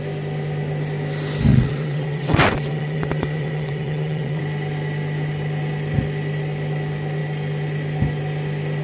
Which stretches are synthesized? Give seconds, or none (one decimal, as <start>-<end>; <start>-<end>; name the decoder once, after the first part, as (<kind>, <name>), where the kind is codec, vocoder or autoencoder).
1.5-4.4 (vocoder, WaveNeXt)